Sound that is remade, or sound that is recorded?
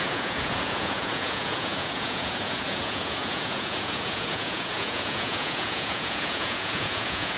remade